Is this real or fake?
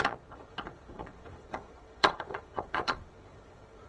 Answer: fake